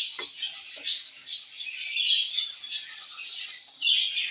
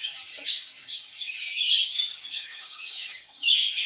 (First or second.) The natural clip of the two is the first